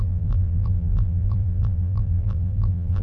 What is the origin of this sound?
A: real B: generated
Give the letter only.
B